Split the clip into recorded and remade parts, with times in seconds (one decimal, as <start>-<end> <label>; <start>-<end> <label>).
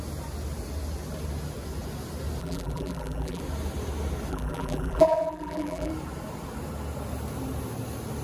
0.0-2.4 recorded; 2.4-3.4 remade; 3.4-4.3 recorded; 4.3-5.9 remade; 5.9-8.2 recorded